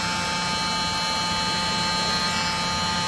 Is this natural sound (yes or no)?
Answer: yes